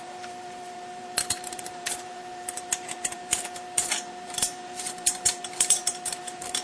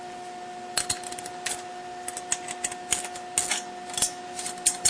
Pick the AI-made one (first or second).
first